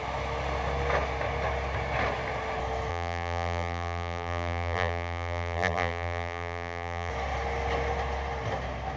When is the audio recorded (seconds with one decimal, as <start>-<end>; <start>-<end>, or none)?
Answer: 0.0-2.9; 7.1-9.0